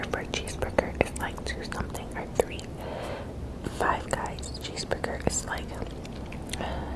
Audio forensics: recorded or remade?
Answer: recorded